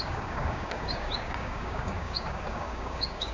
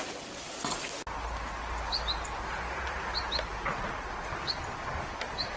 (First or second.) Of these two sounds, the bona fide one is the second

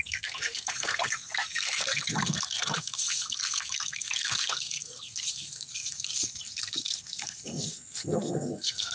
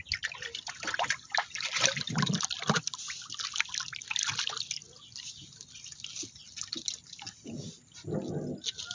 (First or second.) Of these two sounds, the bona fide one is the second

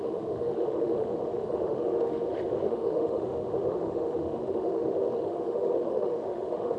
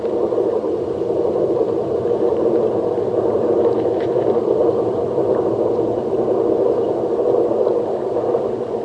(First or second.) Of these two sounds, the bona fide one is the second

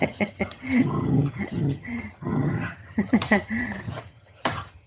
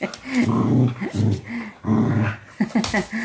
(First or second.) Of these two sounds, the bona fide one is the second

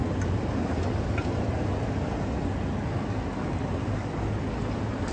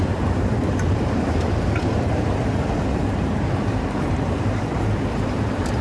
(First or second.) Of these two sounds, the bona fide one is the first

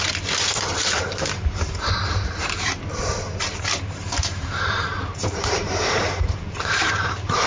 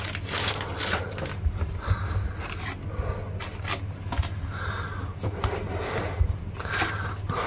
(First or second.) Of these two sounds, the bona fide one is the second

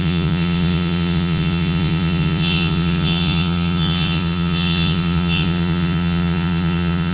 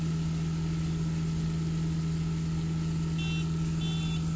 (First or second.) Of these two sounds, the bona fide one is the second